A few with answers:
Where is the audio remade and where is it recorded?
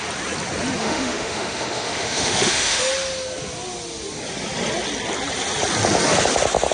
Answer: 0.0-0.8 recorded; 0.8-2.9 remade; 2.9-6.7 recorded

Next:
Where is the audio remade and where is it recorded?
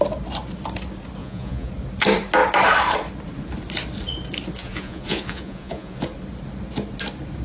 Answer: 0.0-1.2 recorded; 1.2-1.7 remade; 1.7-4.6 recorded; 4.6-6.0 remade; 6.0-7.4 recorded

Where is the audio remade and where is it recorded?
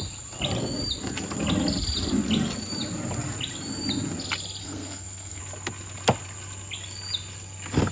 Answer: 0.0-4.6 recorded; 4.6-5.4 remade; 5.4-7.9 recorded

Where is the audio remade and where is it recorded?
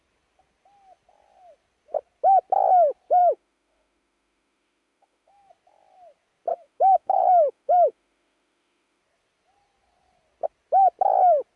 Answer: 0.0-3.2 recorded; 3.2-5.5 remade; 5.5-6.5 recorded; 6.5-9.0 remade; 9.0-11.6 recorded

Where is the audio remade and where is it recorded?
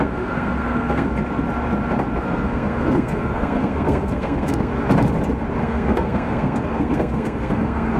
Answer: 0.0-1.1 remade; 1.1-2.2 recorded; 2.2-4.7 remade; 4.7-5.6 recorded; 5.6-8.0 remade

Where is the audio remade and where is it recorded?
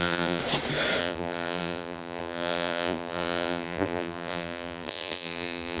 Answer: 0.0-0.4 remade; 0.4-1.0 recorded; 1.0-5.8 remade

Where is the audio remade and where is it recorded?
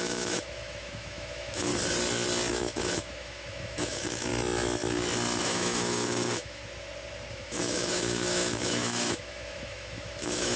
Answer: 0.0-1.7 remade; 1.7-2.5 recorded; 2.5-4.3 remade; 4.3-5.4 recorded; 5.4-6.6 remade; 6.6-7.3 recorded; 7.3-10.6 remade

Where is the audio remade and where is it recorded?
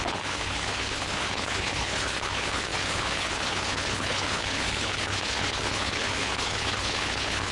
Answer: 0.0-7.5 remade